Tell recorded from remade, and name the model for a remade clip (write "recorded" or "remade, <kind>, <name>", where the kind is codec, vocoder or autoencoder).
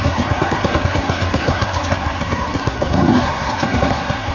remade, codec, SNAC